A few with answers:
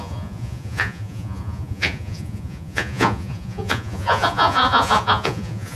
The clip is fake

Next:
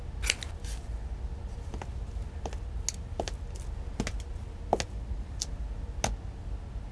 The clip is real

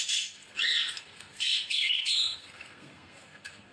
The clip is fake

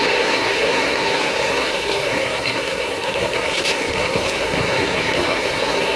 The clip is fake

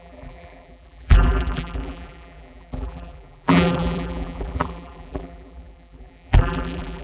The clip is fake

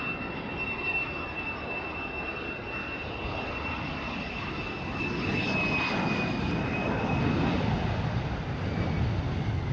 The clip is real